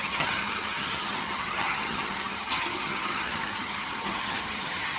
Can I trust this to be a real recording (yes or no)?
no